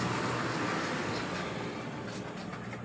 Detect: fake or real real